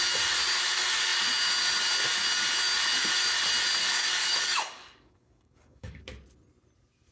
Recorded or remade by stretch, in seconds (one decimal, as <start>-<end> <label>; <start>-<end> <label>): 0.0-3.8 recorded; 3.8-6.0 remade; 6.0-7.1 recorded